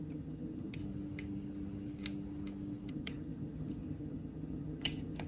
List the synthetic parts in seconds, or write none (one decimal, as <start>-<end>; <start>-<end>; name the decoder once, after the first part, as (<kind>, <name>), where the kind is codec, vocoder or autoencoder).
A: 0.0-0.8 (vocoder, HiFi-GAN); 2.9-5.3